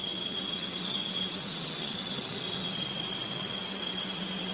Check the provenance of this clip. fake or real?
fake